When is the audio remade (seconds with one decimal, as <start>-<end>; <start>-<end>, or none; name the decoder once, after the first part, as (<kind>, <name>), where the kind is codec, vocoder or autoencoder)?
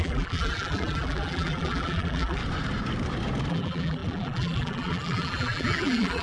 0.0-2.4 (vocoder, BigVGAN v2); 3.5-6.2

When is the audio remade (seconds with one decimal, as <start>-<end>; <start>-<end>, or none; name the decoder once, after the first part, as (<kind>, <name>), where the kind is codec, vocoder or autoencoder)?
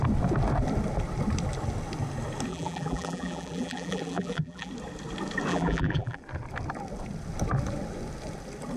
2.5-4.7 (vocoder, BigVGAN v2); 5.5-6.2